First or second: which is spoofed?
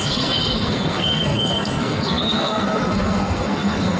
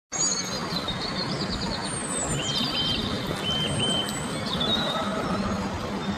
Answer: first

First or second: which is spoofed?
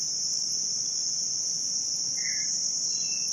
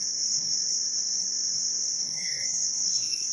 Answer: second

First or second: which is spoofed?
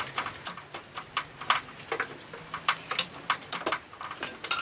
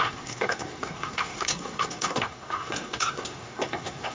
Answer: second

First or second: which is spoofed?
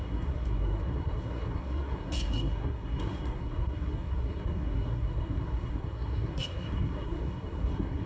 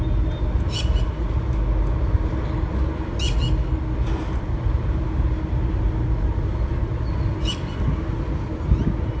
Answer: first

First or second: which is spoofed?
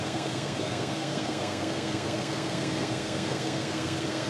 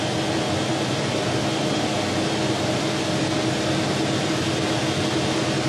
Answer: first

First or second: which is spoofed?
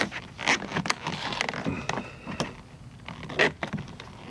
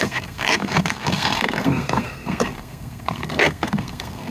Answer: second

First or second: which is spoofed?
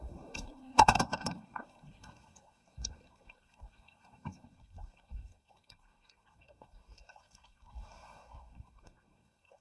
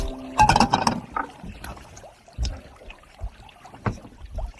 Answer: first